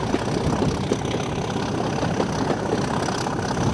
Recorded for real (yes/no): yes